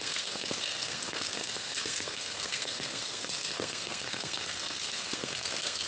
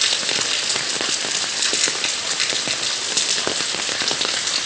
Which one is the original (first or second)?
second